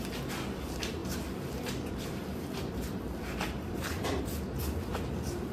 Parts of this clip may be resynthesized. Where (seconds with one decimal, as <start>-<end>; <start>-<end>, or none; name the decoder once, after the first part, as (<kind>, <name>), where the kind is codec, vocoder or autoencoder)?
1.0-4.2 (vocoder, BigVGAN v2)